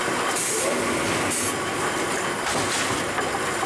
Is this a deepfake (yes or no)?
no